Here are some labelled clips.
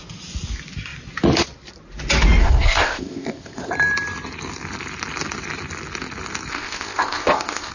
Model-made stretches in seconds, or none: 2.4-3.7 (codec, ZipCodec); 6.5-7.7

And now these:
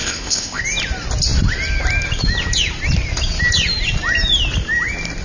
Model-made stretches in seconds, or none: 0.0-0.6 (codec, ZipCodec)